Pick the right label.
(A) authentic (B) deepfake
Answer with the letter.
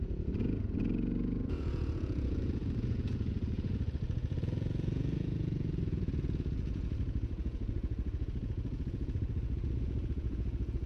B